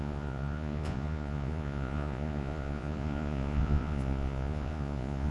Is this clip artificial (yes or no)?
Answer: yes